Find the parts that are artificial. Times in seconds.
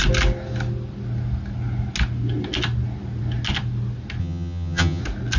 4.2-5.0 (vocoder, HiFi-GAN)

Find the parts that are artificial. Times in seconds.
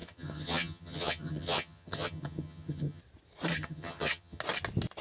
0.0-3.0 (vocoder, HiFi-GAN); 3.5-4.4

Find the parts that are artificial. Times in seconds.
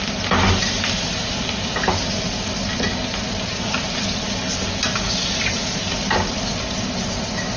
none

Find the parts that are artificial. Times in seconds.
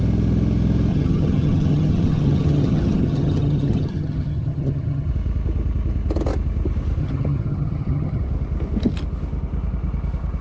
0.9-5.1 (vocoder, HiFi-GAN); 7.0-8.2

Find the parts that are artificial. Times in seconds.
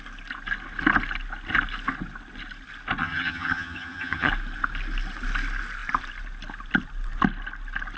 3.0-4.3 (vocoder, HiFi-GAN)